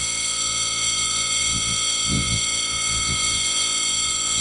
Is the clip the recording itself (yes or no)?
no